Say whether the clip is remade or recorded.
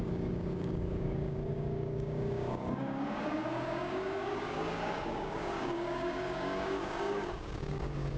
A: remade